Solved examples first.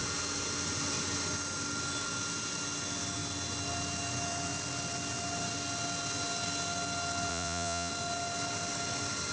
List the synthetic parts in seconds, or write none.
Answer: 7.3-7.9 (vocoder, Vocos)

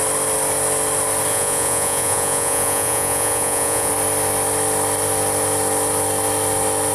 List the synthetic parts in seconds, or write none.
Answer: 1.3-3.9 (vocoder, Vocos)

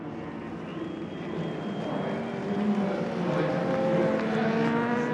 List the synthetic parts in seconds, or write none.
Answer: none

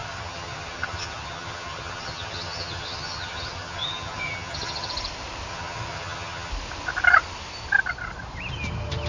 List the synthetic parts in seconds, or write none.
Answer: 0.0-4.9 (vocoder, HiFi-GAN); 5.5-6.5

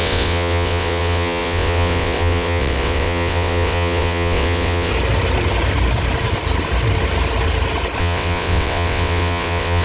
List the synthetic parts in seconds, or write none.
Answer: 0.0-4.9 (vocoder, WaveNeXt); 8.0-9.8

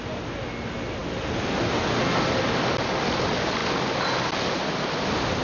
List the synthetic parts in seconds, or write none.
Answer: none

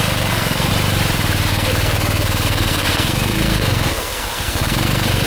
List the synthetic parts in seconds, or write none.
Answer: 0.0-0.7 (codec, SNAC); 1.5-5.3

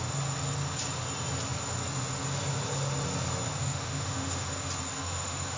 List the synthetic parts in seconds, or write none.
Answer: 3.6-4.5 (autoencoder, DAC-VAE); 5.0-5.6